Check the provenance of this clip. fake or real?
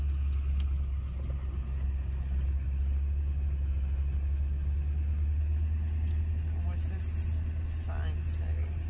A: real